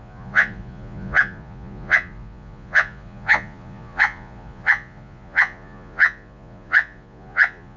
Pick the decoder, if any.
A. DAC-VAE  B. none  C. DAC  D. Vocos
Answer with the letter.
D